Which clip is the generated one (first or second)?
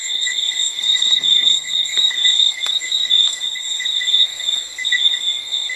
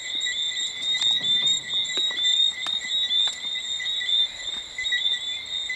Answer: first